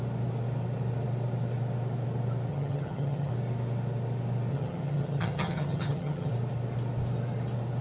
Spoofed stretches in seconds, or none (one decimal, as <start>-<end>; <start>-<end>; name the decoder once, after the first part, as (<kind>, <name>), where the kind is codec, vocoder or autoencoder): 2.5-3.3 (vocoder, HiFi-GAN); 4.5-6.3